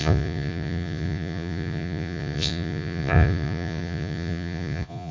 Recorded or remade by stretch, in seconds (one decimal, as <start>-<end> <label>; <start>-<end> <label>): 0.0-5.1 remade